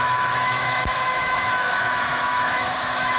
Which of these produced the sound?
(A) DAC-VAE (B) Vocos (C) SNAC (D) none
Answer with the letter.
A